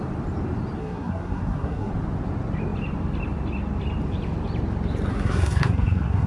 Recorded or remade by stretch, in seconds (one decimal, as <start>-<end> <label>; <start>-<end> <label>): 0.0-0.8 recorded; 0.8-1.9 remade; 1.9-5.1 recorded; 5.1-6.3 remade